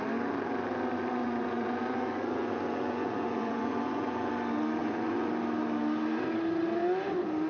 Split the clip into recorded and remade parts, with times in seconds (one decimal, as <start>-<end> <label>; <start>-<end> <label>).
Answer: 0.0-1.2 recorded; 1.2-4.3 remade; 4.3-4.8 recorded; 4.8-5.3 remade; 5.3-7.5 recorded